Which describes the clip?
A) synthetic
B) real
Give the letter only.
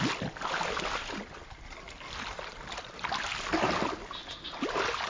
B